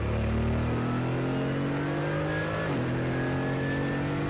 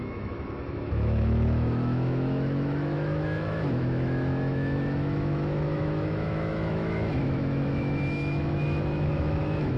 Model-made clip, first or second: second